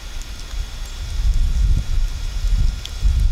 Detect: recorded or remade recorded